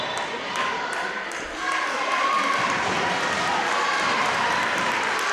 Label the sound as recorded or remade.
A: remade